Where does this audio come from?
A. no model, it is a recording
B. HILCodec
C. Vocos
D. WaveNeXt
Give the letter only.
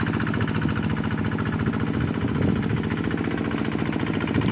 A